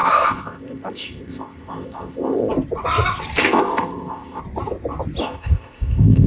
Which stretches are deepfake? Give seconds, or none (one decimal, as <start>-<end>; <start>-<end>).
0.0-2.5; 3.4-4.4; 5.2-6.3